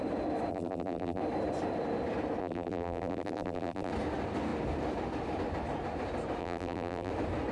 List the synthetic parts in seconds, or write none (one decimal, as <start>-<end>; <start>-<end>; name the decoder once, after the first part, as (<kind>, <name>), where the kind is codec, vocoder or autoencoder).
0.5-1.2 (vocoder, BigVGAN v2); 2.4-3.9; 6.4-7.1